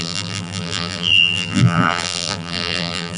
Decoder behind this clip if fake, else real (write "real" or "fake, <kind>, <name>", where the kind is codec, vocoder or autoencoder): fake, vocoder, BigVGAN v2